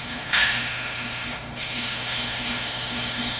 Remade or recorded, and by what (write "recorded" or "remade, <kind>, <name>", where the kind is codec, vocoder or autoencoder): remade, autoencoder, DAC-VAE